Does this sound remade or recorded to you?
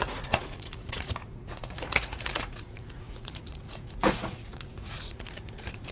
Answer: remade